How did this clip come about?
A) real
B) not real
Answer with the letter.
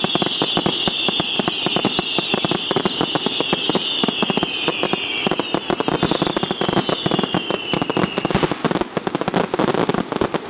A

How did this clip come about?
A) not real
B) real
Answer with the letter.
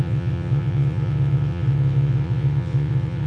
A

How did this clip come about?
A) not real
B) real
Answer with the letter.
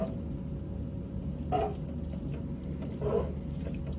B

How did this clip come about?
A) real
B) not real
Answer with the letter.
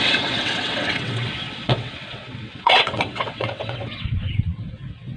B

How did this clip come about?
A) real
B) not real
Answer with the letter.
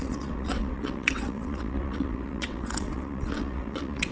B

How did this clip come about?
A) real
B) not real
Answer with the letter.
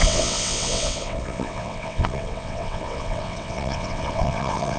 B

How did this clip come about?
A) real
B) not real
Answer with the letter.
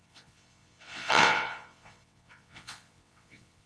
B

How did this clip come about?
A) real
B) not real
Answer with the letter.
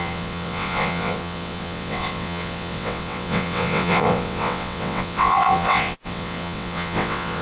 B